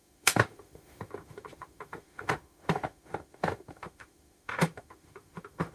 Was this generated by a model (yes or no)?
yes